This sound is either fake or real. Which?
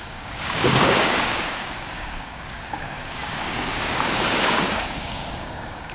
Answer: fake